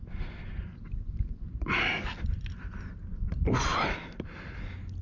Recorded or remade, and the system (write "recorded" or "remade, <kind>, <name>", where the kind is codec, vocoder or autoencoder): recorded